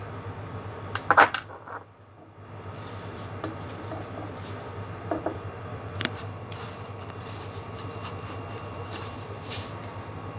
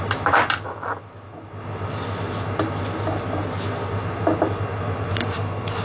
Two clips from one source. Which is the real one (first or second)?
second